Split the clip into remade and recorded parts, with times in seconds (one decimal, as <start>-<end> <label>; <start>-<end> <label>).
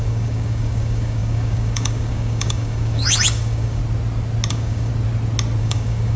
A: 0.0-3.8 remade; 3.8-4.5 recorded; 4.5-4.9 remade; 4.9-5.6 recorded; 5.6-6.2 remade